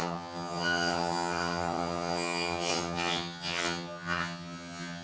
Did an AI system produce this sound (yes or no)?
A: yes